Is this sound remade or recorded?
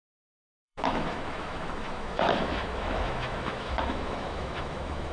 remade